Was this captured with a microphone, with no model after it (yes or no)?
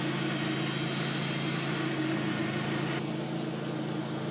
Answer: yes